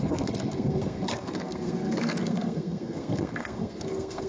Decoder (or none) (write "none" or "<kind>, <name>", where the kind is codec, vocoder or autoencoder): codec, SNAC